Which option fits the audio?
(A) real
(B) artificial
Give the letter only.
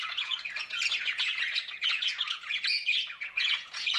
B